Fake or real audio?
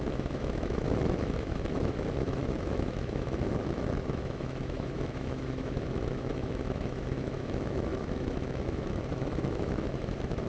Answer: fake